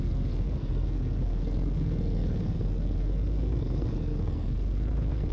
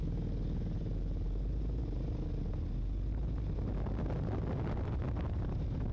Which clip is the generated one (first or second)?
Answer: first